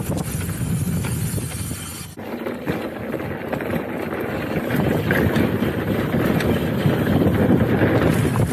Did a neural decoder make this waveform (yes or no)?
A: no